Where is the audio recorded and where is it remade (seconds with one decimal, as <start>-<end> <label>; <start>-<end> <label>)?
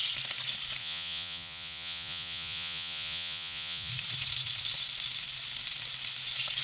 0.0-0.8 recorded; 0.8-3.9 remade; 3.9-6.6 recorded